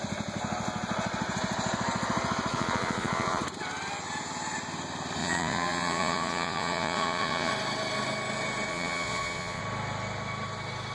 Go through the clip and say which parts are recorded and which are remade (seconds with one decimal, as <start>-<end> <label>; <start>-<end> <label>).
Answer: 0.0-2.5 recorded; 2.5-3.4 remade; 3.4-5.2 recorded; 5.2-7.5 remade; 7.5-8.7 recorded; 8.7-9.6 remade; 9.6-10.9 recorded